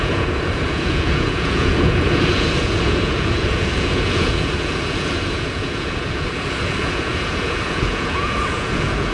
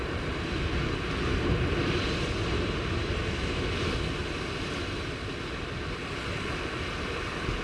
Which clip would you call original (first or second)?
second